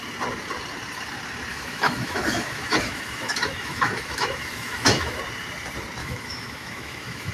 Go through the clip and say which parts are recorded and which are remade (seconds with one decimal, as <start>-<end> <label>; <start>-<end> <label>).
0.0-1.5 recorded; 1.5-5.2 remade; 5.2-6.0 recorded; 6.0-7.3 remade